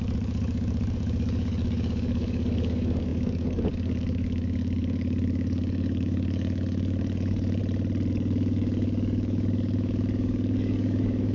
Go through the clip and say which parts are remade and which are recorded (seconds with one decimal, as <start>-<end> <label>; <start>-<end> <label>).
0.0-7.6 remade; 7.6-8.1 recorded; 8.1-11.3 remade